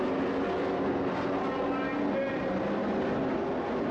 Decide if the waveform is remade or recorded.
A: recorded